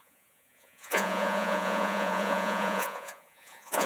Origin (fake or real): fake